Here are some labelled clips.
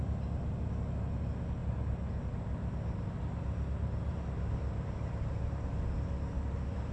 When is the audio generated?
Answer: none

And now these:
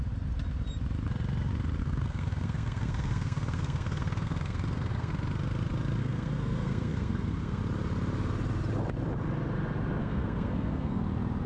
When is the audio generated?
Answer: 1.8-5.1 (codec, SNAC); 6.0-7.6; 10.0-11.0

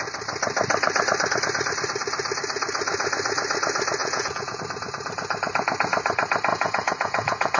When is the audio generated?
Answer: 4.0-4.6 (vocoder, Vocos); 6.5-7.6

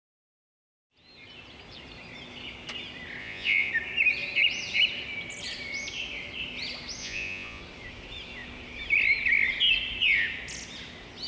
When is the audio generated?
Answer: 3.2-3.7 (vocoder, Vocos); 7.0-7.6

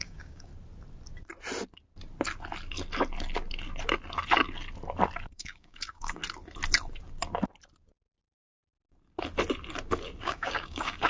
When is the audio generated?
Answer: 0.0-0.5 (codec, DAC); 5.3-6.2; 10.2-11.1

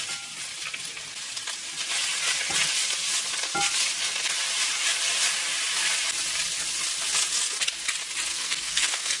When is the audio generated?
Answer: 8.3-9.2 (codec, SNAC)

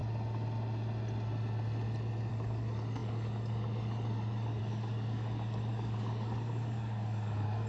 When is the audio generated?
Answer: 2.3-7.7 (codec, DAC)